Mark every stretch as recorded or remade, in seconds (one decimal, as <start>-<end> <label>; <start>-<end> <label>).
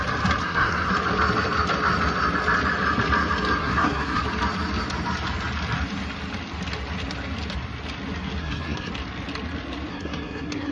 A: 0.0-0.4 recorded; 0.4-0.9 remade; 0.9-3.6 recorded; 3.6-4.2 remade; 4.2-8.4 recorded; 8.4-8.9 remade; 8.9-9.9 recorded; 9.9-10.7 remade